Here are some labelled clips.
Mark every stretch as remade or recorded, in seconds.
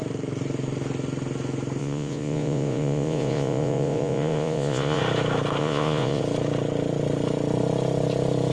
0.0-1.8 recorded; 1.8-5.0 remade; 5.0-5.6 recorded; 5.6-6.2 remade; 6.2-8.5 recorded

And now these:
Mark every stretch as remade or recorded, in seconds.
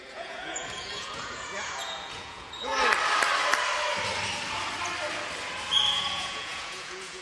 0.0-2.7 remade; 2.7-5.9 recorded; 5.9-7.2 remade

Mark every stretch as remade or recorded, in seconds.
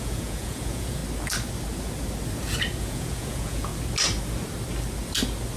0.0-1.0 remade; 1.0-2.8 recorded; 2.8-3.7 remade; 3.7-5.6 recorded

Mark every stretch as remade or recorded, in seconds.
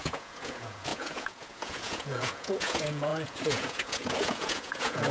0.0-5.1 remade